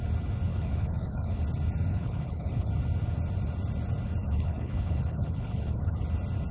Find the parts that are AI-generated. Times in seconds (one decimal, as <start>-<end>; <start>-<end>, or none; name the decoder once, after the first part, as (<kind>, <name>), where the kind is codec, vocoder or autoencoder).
0.5-1.4 (codec, HILCodec); 1.9-2.7; 4.2-6.0